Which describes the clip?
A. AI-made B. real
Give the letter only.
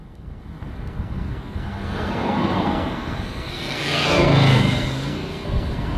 A